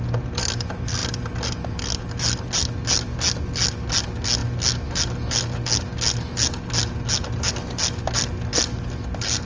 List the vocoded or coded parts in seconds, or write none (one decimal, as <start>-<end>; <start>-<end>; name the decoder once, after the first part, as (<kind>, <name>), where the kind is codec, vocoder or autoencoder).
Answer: none